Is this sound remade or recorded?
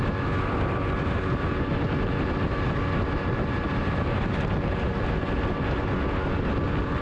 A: recorded